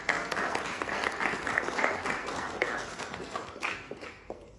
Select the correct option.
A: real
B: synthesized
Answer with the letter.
B